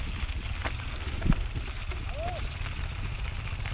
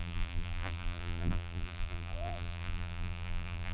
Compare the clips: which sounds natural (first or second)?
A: first